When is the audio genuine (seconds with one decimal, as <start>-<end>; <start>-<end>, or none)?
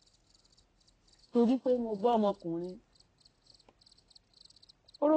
0.0-1.2; 2.3-5.2